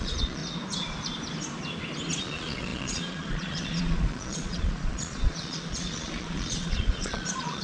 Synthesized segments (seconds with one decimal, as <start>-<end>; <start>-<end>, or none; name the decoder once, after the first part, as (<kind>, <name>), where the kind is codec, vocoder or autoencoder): 0.0-0.4 (vocoder, Vocos); 2.2-7.6